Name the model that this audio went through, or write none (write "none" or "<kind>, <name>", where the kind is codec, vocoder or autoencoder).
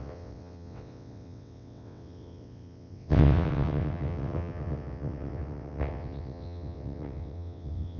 vocoder, WaveNeXt